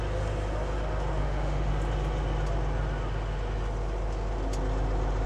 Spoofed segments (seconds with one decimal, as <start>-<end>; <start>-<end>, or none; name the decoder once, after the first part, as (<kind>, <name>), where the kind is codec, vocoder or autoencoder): 1.2-1.7 (autoencoder, DAC-VAE)